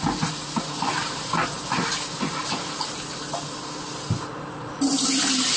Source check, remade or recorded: recorded